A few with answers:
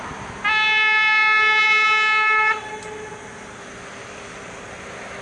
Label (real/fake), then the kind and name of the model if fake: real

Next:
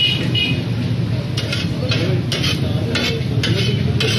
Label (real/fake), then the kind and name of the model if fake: real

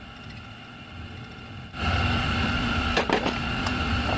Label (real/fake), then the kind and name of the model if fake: real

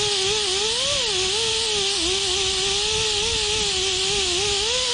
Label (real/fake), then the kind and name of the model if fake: real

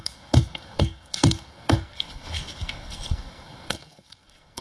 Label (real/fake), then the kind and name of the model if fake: fake, codec, SNAC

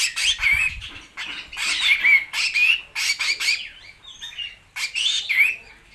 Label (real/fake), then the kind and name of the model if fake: real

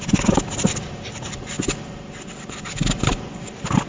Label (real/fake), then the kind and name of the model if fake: real